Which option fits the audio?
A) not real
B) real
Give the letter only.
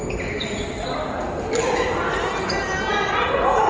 B